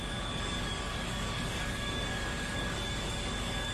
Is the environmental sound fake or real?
fake